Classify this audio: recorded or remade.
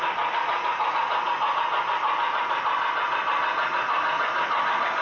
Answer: recorded